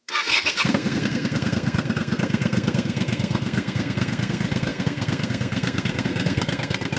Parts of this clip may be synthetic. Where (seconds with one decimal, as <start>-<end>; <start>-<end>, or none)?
0.0-7.0